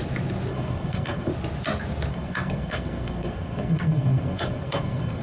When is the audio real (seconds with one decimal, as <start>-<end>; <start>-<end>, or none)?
0.0-0.5; 1.3-2.1